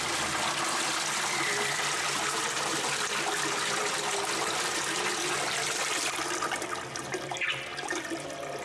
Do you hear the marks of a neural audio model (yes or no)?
yes